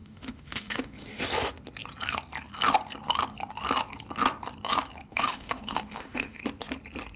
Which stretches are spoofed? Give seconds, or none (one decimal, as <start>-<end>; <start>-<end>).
0.0-1.2; 5.1-6.4